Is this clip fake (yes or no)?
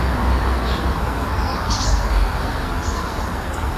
yes